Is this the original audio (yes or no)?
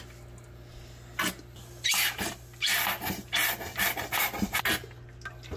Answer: yes